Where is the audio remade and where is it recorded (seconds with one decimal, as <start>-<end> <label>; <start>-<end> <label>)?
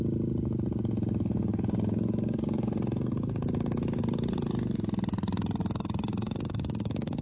0.0-5.6 recorded; 5.6-7.2 remade